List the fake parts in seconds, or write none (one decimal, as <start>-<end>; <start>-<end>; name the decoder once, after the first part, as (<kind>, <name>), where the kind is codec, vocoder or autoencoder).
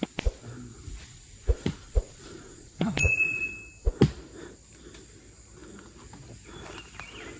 0.7-3.5 (vocoder, Vocos)